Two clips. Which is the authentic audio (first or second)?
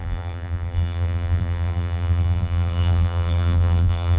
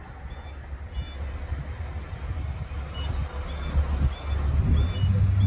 second